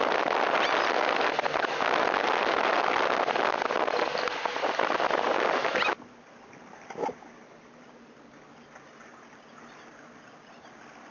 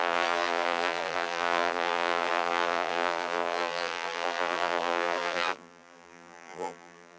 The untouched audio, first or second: first